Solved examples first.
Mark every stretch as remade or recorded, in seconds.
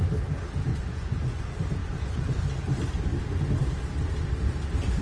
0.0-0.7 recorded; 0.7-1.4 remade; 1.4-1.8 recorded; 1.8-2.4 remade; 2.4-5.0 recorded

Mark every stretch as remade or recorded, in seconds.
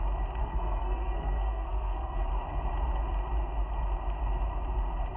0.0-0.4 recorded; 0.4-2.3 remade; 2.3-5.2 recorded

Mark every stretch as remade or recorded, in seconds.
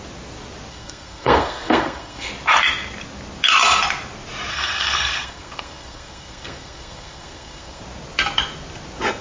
0.0-0.7 recorded; 0.7-2.3 remade; 2.3-4.5 recorded; 4.5-7.8 remade; 7.8-9.2 recorded